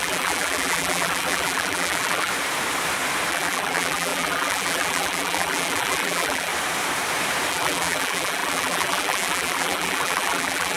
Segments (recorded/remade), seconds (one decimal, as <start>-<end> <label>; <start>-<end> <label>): 0.0-2.3 remade; 2.3-3.3 recorded; 3.3-6.5 remade; 6.5-7.5 recorded; 7.5-10.8 remade